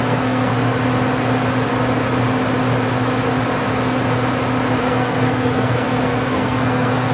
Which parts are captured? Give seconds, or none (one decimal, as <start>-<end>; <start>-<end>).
0.5-4.8